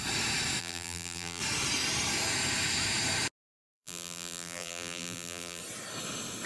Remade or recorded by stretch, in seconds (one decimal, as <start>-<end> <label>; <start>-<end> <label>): 0.0-0.6 recorded; 0.6-1.4 remade; 1.4-3.5 recorded; 3.5-5.6 remade; 5.6-6.5 recorded